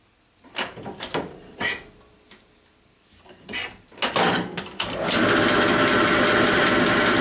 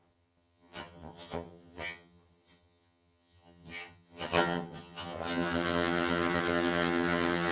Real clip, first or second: first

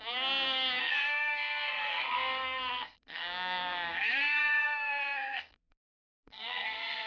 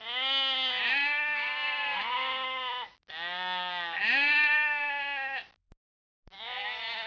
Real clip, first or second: second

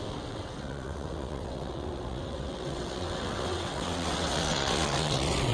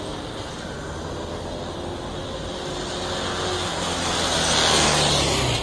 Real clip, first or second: second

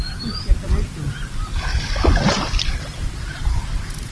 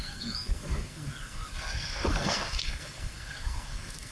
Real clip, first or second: first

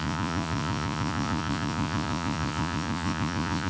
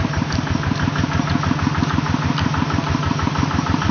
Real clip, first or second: second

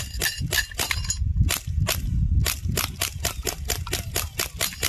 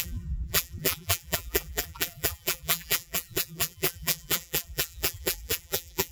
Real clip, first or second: first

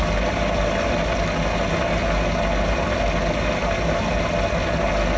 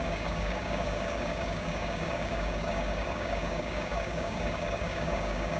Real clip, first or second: first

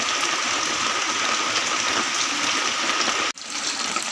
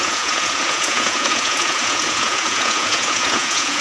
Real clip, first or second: first